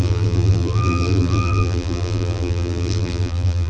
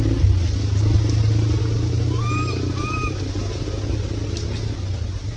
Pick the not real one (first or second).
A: first